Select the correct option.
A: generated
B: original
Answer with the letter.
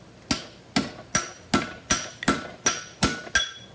B